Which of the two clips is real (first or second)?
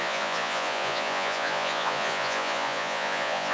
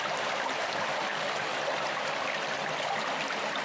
second